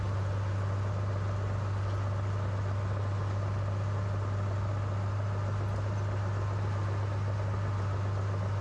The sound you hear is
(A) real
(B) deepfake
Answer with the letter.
A